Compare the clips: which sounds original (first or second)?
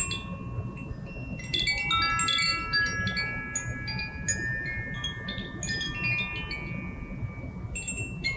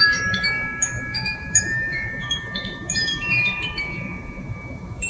first